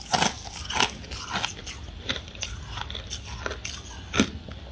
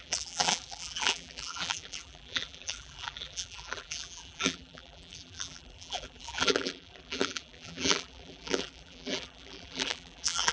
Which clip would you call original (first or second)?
first